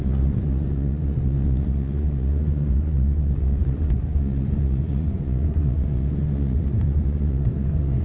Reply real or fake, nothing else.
fake